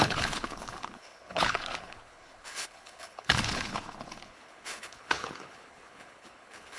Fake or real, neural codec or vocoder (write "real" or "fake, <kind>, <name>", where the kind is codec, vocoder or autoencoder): fake, codec, HILCodec